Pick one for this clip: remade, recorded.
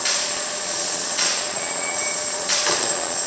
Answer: remade